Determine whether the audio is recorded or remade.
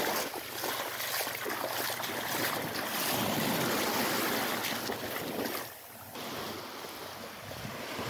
recorded